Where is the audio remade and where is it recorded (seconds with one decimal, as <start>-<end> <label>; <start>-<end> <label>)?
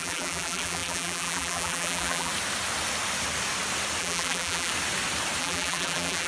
0.0-2.3 remade; 2.3-4.0 recorded; 4.0-4.7 remade; 4.7-5.4 recorded; 5.4-6.3 remade